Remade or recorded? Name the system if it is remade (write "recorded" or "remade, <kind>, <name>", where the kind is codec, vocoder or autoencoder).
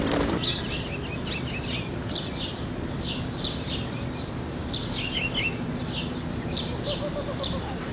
recorded